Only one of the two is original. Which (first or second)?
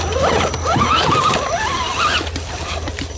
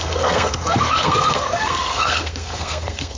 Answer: first